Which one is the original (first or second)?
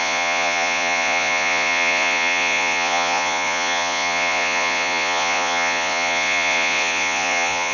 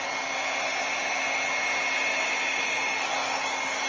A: second